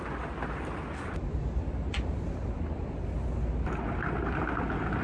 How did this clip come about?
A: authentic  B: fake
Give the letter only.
A